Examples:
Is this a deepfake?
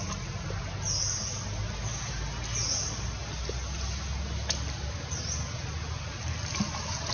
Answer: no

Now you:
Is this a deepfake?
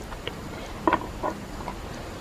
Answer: no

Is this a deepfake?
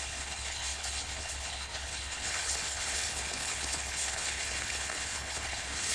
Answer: yes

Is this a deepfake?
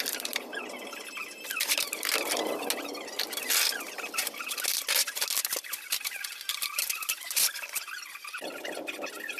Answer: no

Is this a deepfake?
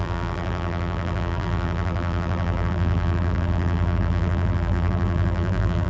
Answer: yes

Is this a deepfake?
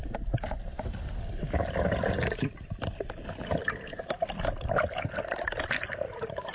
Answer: no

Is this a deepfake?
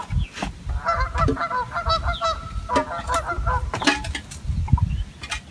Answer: no